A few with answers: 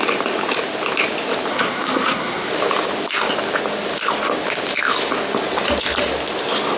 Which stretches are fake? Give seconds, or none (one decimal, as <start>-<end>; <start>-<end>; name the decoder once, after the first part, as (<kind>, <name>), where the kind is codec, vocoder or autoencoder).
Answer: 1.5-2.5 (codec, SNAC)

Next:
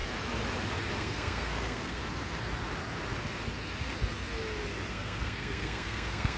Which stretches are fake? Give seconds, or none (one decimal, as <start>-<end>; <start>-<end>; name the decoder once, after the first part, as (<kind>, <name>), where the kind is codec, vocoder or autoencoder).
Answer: 1.0-2.0 (codec, SNAC); 4.9-6.4

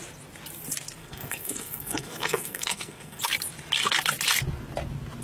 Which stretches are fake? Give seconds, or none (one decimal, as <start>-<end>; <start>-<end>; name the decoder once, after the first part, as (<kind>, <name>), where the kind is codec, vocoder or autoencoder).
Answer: 1.0-3.2 (codec, SNAC)